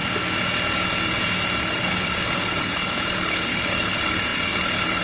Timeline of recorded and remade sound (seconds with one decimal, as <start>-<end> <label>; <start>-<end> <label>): 0.0-1.7 recorded; 1.7-5.0 remade